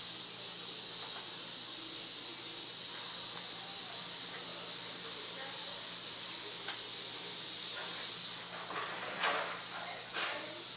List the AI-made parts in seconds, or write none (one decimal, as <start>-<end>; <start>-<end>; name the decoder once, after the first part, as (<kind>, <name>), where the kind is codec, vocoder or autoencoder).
none